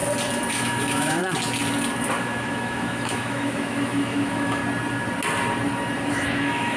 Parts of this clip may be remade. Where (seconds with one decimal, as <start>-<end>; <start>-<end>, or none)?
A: 0.5-1.2; 2.2-4.6; 6.1-6.8